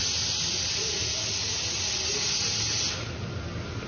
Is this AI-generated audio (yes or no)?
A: no